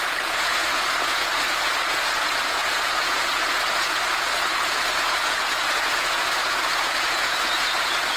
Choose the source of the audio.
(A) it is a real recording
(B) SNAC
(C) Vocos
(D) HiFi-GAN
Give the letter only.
C